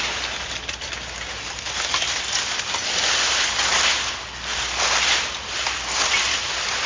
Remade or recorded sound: recorded